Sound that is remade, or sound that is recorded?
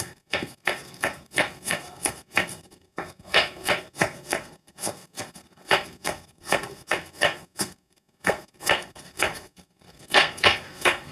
remade